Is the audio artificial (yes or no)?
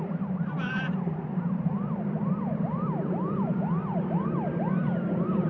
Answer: yes